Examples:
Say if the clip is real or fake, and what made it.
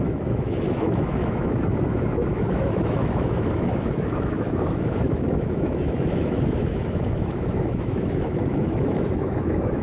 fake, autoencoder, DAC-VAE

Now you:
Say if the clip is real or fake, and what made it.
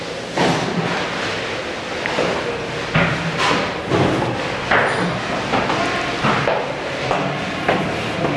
real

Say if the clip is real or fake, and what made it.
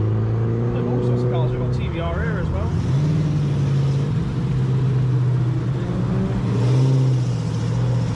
real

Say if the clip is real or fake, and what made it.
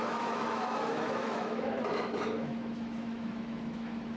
fake, autoencoder, DAC-VAE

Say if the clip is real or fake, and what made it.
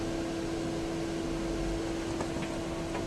real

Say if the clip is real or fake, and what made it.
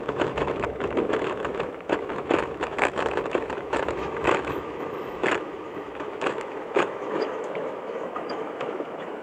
fake, autoencoder, DAC-VAE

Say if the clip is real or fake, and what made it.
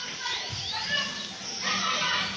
real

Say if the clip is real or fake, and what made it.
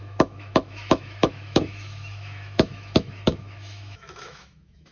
fake, autoencoder, DAC-VAE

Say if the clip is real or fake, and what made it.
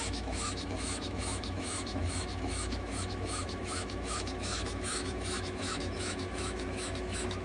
fake, autoencoder, DAC-VAE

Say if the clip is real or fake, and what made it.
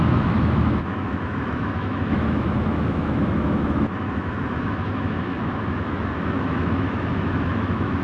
fake, autoencoder, DAC-VAE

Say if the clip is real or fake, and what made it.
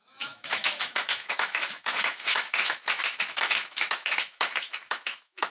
fake, autoencoder, DAC-VAE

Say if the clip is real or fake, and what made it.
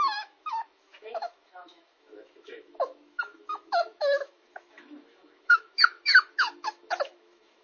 fake, autoencoder, DAC-VAE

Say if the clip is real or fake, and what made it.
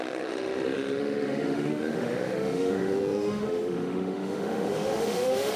fake, autoencoder, DAC-VAE